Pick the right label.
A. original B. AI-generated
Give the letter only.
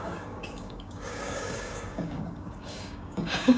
B